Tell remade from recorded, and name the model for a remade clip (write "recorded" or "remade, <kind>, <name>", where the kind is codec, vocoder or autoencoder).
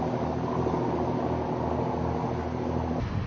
recorded